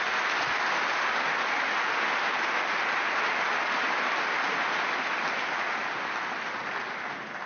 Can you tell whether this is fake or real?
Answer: real